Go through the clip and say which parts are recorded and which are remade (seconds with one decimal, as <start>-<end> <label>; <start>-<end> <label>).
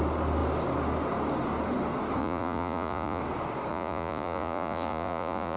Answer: 0.0-2.2 recorded; 2.2-3.2 remade; 3.2-3.7 recorded; 3.7-5.6 remade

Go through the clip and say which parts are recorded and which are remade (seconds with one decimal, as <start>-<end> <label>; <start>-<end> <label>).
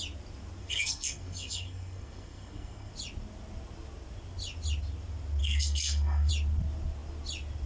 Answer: 0.0-0.6 recorded; 0.6-2.9 remade; 2.9-5.4 recorded; 5.4-6.3 remade; 6.3-7.7 recorded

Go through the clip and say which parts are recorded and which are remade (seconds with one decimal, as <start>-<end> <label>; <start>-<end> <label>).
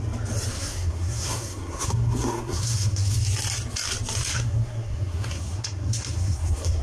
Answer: 0.0-0.5 recorded; 0.5-3.2 remade; 3.2-4.3 recorded; 4.3-6.8 remade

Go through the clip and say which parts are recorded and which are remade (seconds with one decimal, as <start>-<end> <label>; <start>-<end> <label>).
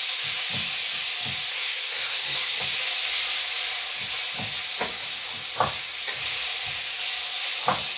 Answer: 0.0-1.5 recorded; 1.5-2.6 remade; 2.6-8.0 recorded